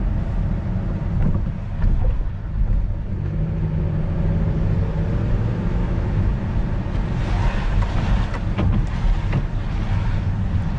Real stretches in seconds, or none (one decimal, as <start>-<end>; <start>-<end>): 0.0-5.7; 6.3-10.8

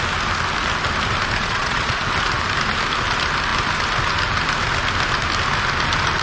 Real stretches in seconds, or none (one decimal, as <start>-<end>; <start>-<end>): 0.0-1.4; 2.0-6.2

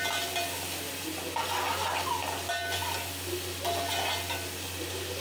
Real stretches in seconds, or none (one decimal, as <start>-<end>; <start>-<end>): 0.0-5.2